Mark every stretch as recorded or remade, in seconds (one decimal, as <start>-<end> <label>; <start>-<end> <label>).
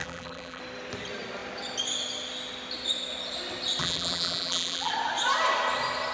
0.0-0.6 remade; 0.6-3.8 recorded; 3.8-4.9 remade; 4.9-6.1 recorded